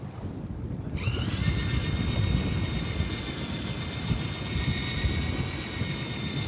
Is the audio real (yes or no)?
yes